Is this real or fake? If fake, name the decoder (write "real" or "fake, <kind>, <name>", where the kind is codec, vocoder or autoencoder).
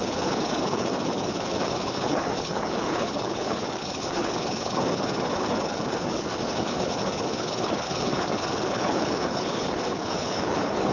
fake, codec, HILCodec